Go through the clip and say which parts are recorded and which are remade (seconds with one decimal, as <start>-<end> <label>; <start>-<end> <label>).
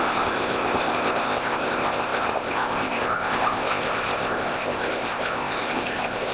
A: 0.0-6.3 remade